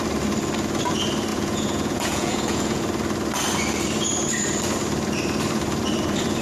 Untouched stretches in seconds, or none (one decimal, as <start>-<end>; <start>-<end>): 0.0-1.3; 2.8-6.4